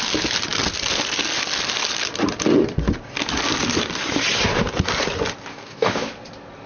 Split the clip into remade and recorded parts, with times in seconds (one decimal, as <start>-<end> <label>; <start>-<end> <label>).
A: 0.0-5.5 recorded; 5.5-6.1 remade; 6.1-6.7 recorded